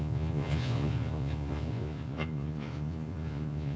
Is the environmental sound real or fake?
fake